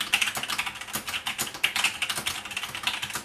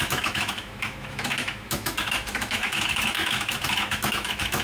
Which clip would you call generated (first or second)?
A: second